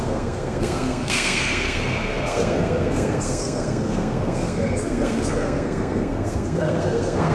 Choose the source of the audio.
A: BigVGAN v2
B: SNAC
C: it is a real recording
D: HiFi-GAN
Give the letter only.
B